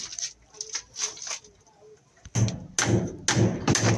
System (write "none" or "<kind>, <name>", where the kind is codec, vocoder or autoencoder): none